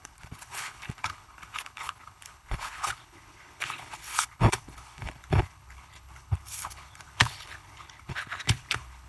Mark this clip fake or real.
fake